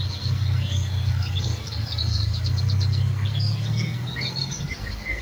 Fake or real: fake